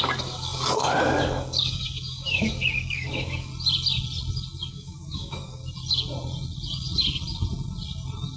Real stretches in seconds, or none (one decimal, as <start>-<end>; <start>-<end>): 3.5-4.7; 5.6-8.4

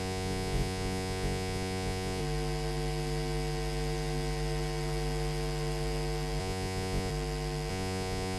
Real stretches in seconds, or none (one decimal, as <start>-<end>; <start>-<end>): 2.2-6.4; 7.1-7.7

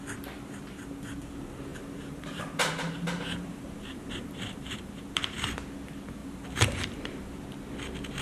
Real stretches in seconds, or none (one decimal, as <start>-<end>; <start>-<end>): 0.0-1.7; 4.9-6.2; 7.3-8.2

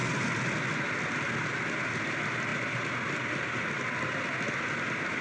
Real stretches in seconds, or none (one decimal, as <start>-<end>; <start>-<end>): 0.0-5.2

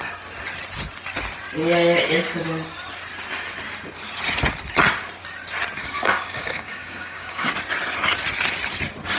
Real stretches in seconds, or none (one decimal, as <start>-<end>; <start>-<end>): 0.0-5.8; 7.5-9.2

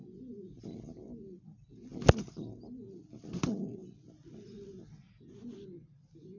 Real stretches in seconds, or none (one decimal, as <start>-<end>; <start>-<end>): 0.0-6.4